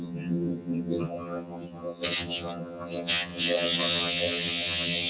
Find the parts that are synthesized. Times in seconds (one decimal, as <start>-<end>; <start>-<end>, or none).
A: 0.0-5.1